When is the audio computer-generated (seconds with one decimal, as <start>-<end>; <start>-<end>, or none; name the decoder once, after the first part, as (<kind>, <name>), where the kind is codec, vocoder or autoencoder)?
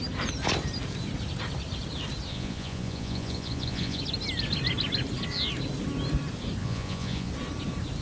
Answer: 2.3-4.0 (vocoder, Vocos); 6.6-7.3